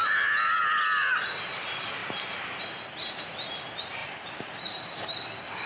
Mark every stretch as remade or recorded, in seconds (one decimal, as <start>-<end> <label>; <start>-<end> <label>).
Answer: 0.0-4.0 recorded; 4.0-4.8 remade; 4.8-5.7 recorded